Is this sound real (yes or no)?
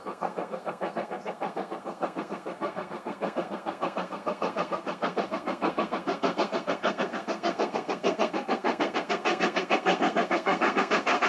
no